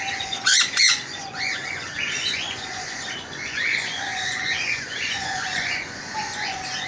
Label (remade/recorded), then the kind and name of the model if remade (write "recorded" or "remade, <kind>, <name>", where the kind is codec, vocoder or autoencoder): remade, vocoder, Vocos